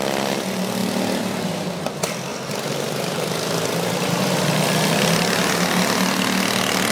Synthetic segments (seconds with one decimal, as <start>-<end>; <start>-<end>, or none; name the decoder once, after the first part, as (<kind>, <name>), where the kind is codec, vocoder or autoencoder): 2.3-4.5 (vocoder, BigVGAN v2)